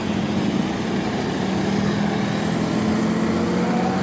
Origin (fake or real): real